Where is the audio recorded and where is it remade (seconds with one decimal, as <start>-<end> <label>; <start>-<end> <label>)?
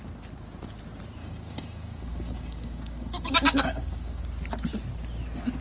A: 0.0-1.2 recorded; 1.2-4.2 remade; 4.2-5.6 recorded